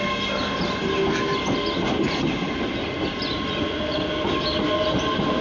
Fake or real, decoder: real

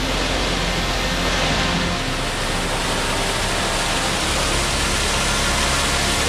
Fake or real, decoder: real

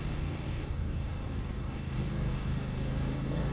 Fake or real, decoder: fake, codec, DAC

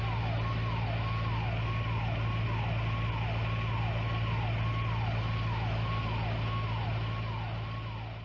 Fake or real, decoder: real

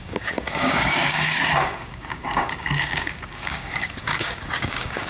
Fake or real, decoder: fake, codec, DAC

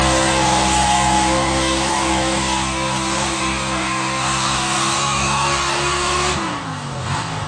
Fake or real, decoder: fake, codec, DAC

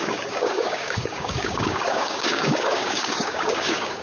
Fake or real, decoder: fake, codec, DAC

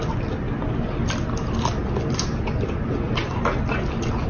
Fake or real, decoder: real